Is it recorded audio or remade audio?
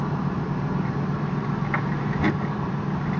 recorded